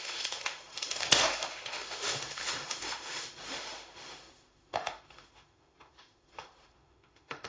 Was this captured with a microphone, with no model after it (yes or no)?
no